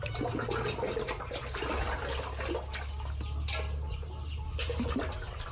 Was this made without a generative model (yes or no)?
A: yes